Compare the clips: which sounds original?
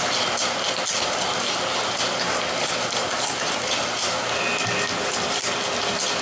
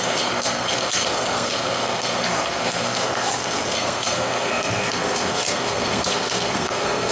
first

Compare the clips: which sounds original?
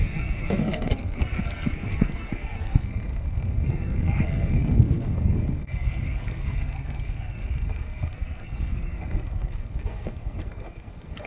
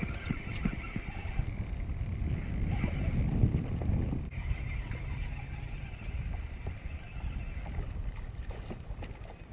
second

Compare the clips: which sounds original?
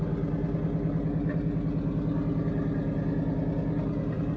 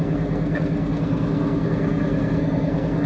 first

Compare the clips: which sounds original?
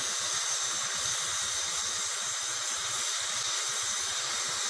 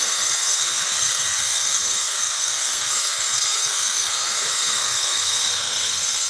first